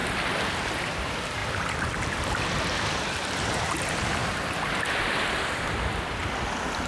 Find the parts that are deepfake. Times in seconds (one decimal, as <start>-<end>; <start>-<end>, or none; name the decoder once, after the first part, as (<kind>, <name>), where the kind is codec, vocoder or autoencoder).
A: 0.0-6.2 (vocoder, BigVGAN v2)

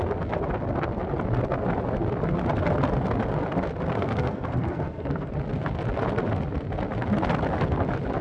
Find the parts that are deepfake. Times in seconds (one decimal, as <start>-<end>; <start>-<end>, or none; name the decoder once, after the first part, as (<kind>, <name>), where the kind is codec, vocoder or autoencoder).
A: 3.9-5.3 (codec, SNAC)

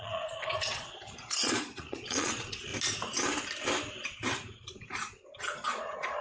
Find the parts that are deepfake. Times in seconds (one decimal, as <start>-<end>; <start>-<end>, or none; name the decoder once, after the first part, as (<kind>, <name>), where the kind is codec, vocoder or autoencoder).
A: 0.0-2.7 (vocoder, Vocos); 5.4-6.2

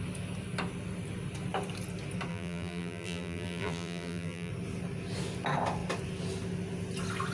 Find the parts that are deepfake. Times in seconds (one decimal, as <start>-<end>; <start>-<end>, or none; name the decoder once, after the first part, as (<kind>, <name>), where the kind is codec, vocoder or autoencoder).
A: 2.3-4.5 (vocoder, BigVGAN v2)

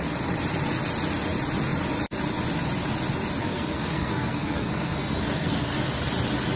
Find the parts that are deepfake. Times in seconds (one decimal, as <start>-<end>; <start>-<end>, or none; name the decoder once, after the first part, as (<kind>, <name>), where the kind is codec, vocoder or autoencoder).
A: 3.4-5.9 (codec, SNAC)